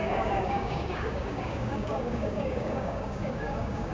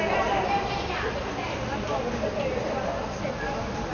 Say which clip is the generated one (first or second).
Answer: first